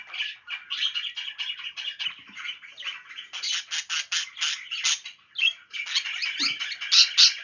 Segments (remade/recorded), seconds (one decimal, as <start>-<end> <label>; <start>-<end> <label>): 0.0-7.4 recorded